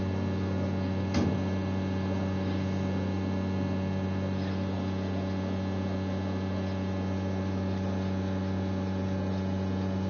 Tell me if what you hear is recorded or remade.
recorded